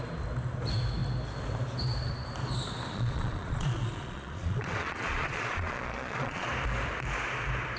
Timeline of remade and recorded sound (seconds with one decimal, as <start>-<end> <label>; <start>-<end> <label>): 0.0-2.9 recorded; 2.9-6.5 remade; 6.5-7.8 recorded